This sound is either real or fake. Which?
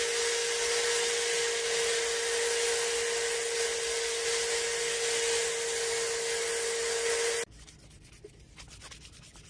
real